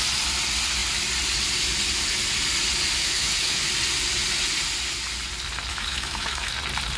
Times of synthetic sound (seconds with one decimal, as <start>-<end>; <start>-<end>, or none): 3.0-3.7; 5.7-6.5